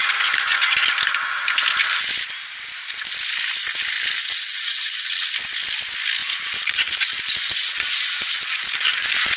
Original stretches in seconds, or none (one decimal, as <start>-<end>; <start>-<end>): 0.7-4.2; 5.0-6.2